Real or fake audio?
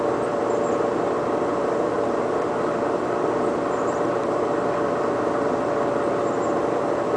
fake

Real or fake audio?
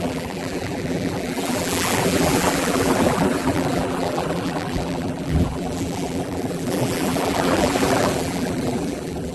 fake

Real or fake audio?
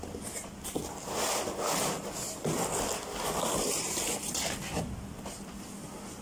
real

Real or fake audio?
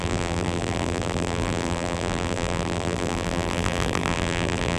fake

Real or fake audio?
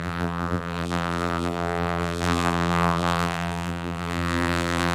fake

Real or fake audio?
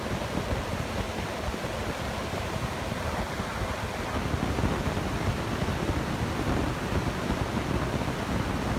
real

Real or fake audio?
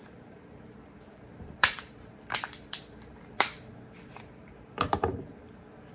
fake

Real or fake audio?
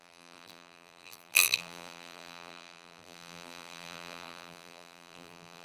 fake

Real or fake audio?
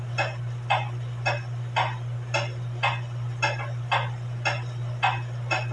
real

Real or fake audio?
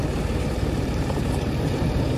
fake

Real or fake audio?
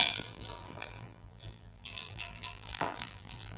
fake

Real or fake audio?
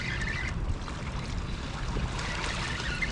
real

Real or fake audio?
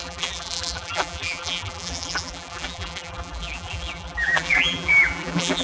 fake